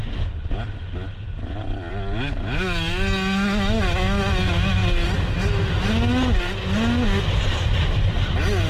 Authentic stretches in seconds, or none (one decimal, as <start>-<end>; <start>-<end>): 0.0-8.7